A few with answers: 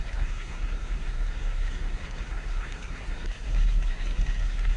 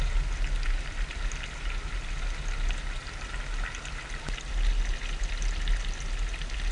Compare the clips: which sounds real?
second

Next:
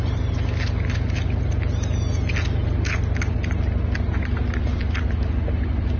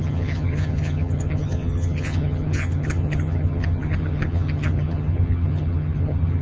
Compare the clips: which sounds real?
first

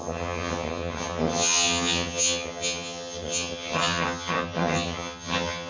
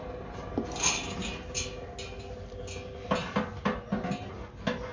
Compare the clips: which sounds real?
second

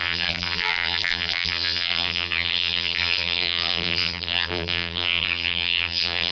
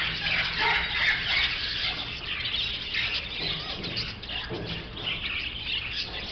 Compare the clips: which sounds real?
second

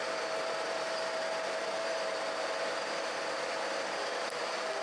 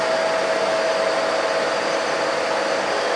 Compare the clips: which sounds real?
second